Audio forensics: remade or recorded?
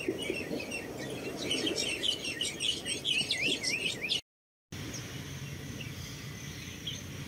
recorded